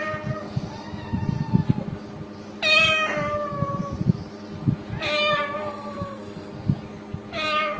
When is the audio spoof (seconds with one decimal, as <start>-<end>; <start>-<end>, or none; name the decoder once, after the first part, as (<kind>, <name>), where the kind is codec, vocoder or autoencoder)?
5.6-6.5 (codec, SNAC)